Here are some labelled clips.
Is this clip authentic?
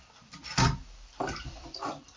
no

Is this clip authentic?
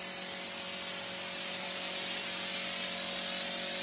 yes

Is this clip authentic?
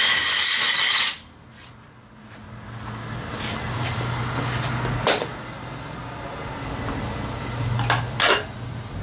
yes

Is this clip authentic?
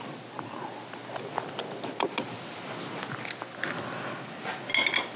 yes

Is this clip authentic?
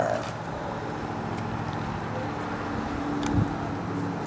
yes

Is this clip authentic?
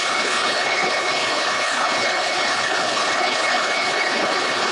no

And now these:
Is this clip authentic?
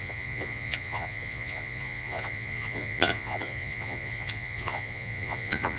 no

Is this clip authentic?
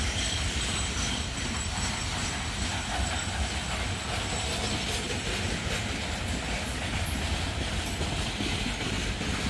yes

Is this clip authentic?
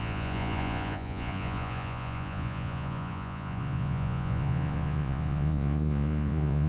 no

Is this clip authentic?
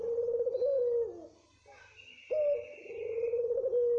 yes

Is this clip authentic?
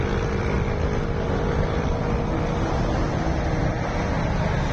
yes